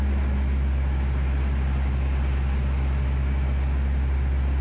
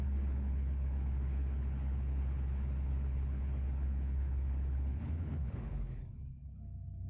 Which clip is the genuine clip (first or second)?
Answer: first